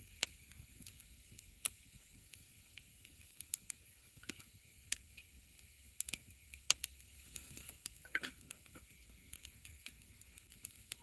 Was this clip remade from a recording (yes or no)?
yes